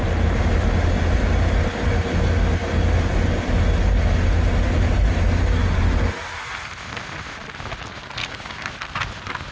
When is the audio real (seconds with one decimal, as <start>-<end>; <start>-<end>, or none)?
0.0-8.2; 8.7-9.5